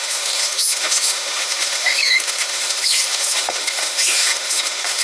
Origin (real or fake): fake